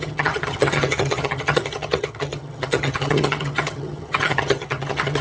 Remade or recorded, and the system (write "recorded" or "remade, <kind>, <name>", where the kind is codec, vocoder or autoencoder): remade, vocoder, HiFi-GAN